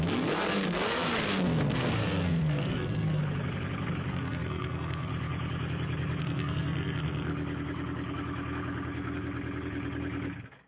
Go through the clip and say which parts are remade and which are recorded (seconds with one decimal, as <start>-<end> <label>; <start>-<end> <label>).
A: 0.0-3.2 remade; 3.2-4.1 recorded; 4.1-5.1 remade; 5.1-6.2 recorded; 6.2-7.3 remade; 7.3-10.7 recorded